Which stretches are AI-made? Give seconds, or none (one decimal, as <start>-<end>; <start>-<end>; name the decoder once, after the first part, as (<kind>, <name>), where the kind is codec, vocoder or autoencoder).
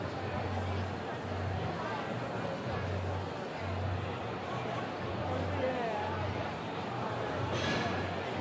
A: none